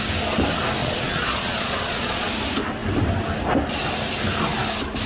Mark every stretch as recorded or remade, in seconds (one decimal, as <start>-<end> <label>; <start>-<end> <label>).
0.0-0.8 recorded; 0.8-2.3 remade; 2.3-5.1 recorded

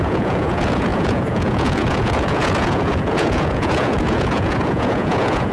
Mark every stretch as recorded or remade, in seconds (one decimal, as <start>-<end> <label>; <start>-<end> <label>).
0.0-5.5 remade

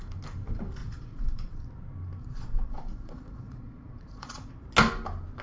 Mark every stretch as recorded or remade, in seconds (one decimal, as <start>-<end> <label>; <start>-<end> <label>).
0.0-0.8 recorded; 0.8-1.7 remade; 1.7-2.2 recorded; 2.2-4.5 remade; 4.5-5.4 recorded